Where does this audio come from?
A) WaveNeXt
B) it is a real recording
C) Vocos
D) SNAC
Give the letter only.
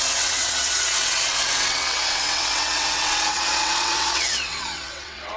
A